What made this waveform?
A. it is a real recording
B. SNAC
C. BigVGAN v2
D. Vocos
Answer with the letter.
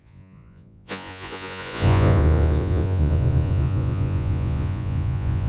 D